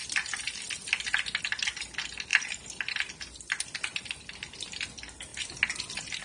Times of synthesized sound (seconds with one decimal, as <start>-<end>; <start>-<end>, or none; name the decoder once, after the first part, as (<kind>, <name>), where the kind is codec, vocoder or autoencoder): 2.3-4.2 (vocoder, BigVGAN v2)